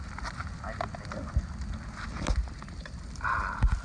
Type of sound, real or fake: real